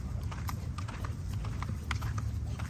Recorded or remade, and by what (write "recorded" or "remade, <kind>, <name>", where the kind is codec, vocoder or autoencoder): recorded